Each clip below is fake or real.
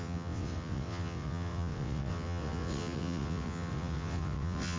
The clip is fake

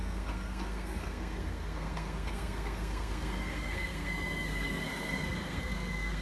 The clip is fake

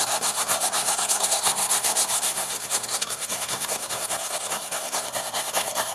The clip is fake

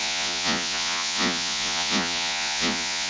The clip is fake